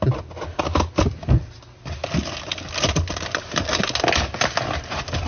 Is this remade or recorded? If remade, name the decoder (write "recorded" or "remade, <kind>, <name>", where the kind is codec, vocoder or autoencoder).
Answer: recorded